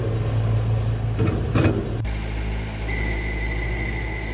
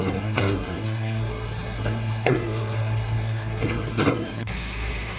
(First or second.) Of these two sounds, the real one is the first